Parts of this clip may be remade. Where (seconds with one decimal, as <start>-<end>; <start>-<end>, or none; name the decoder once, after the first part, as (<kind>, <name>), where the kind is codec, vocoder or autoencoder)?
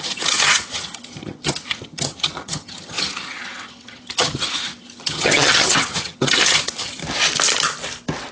0.0-7.0 (vocoder, HiFi-GAN)